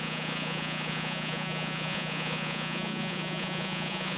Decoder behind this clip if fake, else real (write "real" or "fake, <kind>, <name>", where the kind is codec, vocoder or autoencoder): fake, vocoder, Vocos